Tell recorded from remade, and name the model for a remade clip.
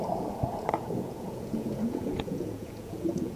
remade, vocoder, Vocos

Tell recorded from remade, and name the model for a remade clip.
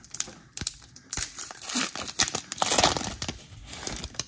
remade, vocoder, BigVGAN v2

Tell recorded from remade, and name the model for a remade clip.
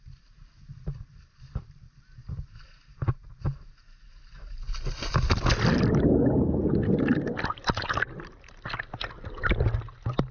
recorded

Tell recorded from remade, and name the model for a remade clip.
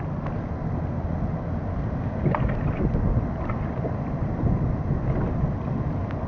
recorded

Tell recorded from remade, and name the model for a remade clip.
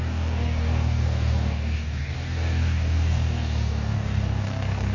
remade, codec, DAC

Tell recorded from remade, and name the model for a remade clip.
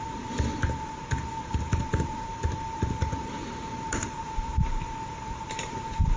remade, vocoder, BigVGAN v2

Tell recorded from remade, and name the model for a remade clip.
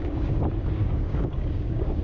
remade, codec, DAC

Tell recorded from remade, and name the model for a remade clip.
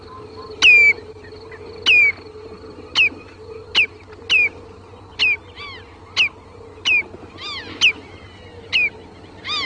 recorded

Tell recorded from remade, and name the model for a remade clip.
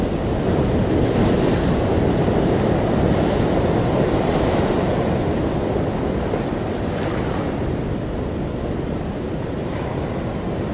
recorded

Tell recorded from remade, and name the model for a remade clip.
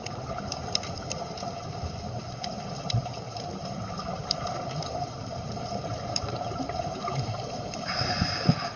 remade, vocoder, BigVGAN v2